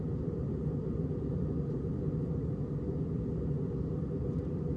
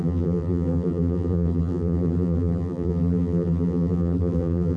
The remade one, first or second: second